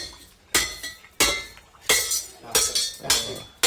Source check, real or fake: real